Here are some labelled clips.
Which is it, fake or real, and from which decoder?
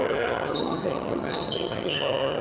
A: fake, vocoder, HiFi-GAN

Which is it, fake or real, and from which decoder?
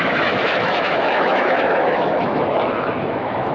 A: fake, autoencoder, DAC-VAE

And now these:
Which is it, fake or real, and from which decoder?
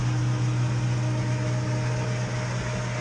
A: real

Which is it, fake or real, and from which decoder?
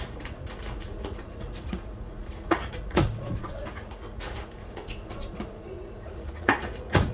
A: fake, vocoder, Vocos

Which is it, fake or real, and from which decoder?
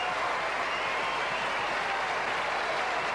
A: real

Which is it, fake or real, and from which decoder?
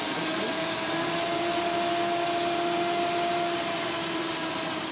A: real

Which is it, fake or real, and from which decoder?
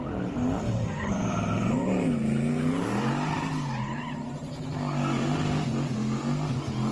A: real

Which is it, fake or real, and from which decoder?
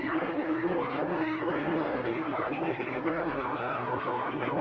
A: fake, codec, SNAC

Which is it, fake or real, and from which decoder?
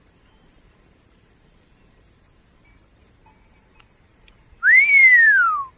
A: fake, vocoder, BigVGAN v2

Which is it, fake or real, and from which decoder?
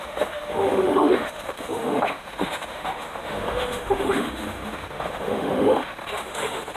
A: fake, autoencoder, DAC-VAE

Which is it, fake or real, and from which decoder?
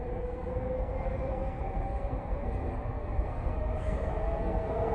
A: fake, codec, SNAC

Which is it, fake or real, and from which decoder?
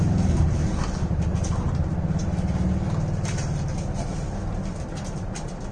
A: real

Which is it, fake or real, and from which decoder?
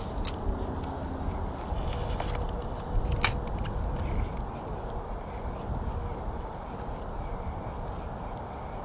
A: real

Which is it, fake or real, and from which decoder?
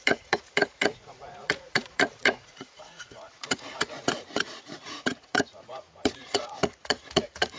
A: fake, vocoder, Vocos